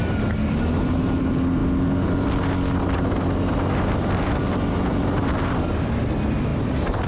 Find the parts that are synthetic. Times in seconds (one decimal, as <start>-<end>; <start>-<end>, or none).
none